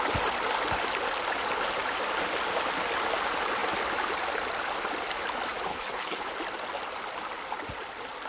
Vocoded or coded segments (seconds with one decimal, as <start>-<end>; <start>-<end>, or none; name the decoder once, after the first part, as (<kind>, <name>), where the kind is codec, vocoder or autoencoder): 5.7-6.3 (codec, HILCodec)